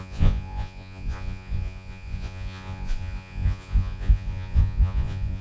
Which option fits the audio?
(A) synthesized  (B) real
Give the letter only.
A